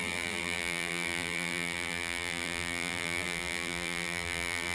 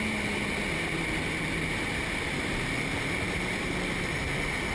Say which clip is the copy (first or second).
first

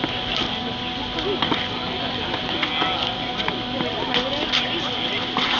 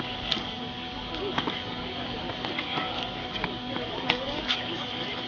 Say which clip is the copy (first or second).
second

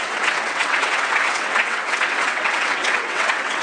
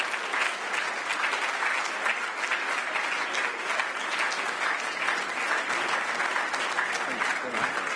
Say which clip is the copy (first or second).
first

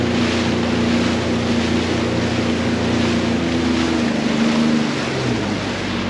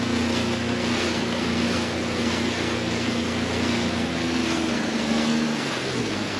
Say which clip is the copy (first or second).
second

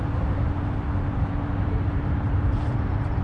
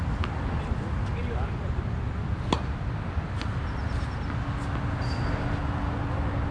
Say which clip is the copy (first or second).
first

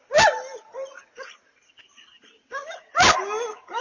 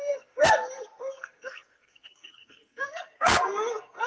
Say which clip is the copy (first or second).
second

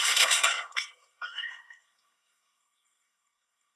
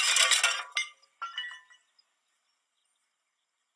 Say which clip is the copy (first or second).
first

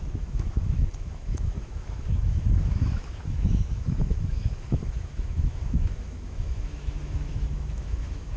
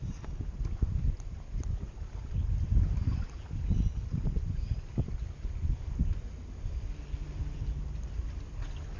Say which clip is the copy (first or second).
first